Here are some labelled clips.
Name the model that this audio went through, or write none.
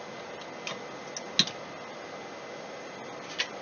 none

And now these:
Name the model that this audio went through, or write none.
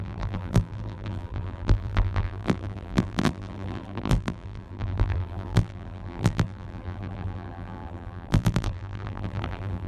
vocoder, BigVGAN v2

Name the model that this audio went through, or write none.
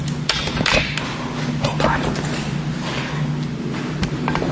none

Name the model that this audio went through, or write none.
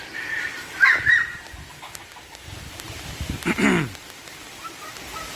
vocoder, BigVGAN v2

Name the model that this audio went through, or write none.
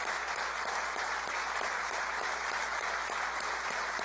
vocoder, BigVGAN v2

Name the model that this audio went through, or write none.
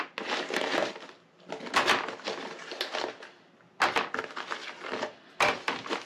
none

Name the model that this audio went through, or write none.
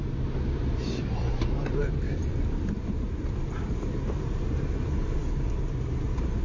vocoder, BigVGAN v2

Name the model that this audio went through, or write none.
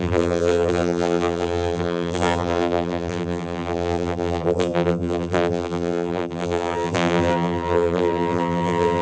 vocoder, BigVGAN v2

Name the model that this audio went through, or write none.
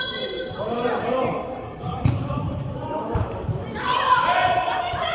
vocoder, BigVGAN v2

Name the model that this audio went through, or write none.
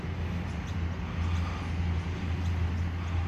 none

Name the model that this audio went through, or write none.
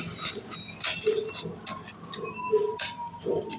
none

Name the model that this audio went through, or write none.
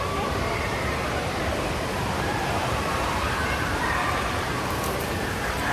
vocoder, BigVGAN v2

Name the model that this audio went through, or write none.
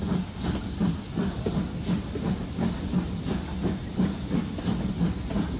none